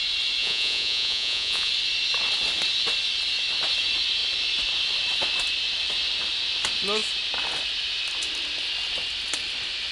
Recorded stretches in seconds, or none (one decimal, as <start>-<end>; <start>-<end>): 0.0-0.4; 1.7-9.9